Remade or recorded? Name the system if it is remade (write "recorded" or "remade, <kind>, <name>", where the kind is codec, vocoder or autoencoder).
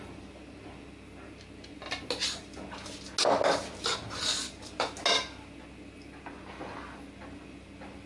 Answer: recorded